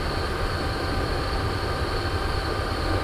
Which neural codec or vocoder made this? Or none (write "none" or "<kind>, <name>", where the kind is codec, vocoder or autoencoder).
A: none